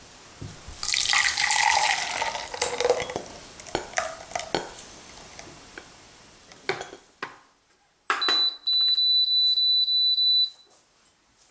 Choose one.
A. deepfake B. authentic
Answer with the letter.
B